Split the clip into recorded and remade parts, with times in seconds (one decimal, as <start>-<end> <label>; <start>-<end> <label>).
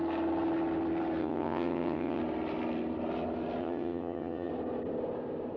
0.0-1.2 recorded; 1.2-2.2 remade; 2.2-3.6 recorded; 3.6-4.5 remade; 4.5-5.6 recorded